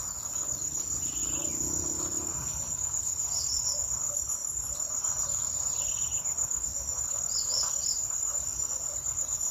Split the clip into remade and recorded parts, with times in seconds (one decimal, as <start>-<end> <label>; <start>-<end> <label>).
0.0-1.2 recorded; 1.2-2.3 remade; 2.3-4.4 recorded; 4.4-5.9 remade; 5.9-8.0 recorded; 8.0-8.7 remade; 8.7-9.5 recorded